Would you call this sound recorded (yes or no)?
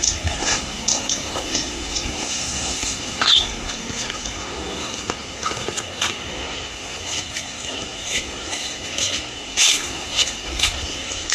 no